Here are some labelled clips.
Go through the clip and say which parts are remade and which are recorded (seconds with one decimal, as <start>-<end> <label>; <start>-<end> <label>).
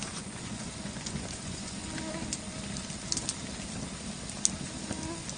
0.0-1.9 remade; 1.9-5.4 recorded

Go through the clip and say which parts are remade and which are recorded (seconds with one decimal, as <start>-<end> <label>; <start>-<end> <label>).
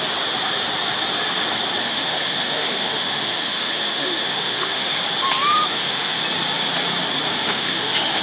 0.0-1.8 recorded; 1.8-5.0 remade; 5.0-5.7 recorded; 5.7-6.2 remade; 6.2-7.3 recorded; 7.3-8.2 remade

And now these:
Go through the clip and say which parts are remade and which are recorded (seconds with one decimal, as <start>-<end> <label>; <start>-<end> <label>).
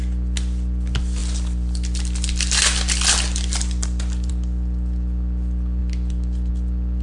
0.0-1.2 recorded; 1.2-4.3 remade; 4.3-5.8 recorded; 5.8-6.5 remade; 6.5-7.0 recorded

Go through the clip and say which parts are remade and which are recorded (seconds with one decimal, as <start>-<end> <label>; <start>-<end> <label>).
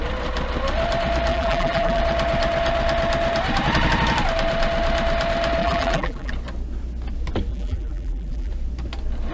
0.0-1.3 recorded; 1.3-2.0 remade; 2.0-5.6 recorded; 5.6-6.3 remade; 6.3-7.5 recorded; 7.5-8.5 remade; 8.5-9.3 recorded